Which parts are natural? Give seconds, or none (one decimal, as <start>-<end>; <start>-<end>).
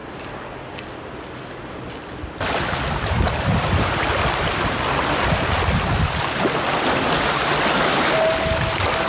0.0-9.1